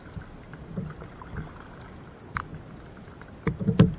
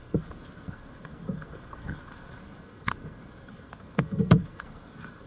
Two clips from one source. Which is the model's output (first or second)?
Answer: second